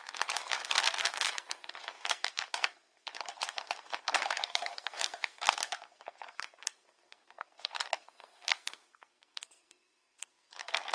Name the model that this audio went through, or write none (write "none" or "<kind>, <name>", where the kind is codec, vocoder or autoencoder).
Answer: codec, SNAC